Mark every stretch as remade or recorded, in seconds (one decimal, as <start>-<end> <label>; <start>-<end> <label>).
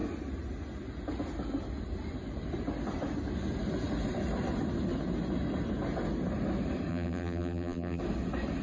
0.0-6.9 recorded; 6.9-8.0 remade; 8.0-8.6 recorded